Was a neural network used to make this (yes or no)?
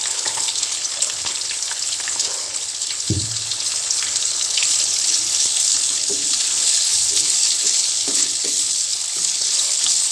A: yes